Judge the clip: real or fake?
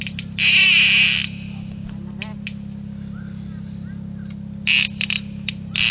real